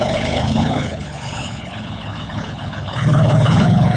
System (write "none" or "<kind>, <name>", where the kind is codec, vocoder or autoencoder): codec, HILCodec